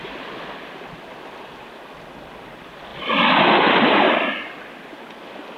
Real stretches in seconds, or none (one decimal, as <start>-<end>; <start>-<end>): 0.0-5.6